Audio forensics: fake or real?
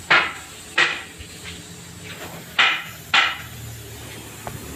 real